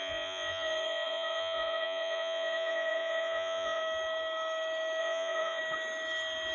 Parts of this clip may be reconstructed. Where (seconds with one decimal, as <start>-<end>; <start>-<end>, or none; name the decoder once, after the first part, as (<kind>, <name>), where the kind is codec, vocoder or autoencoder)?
0.0-3.8 (vocoder, Vocos); 5.0-5.6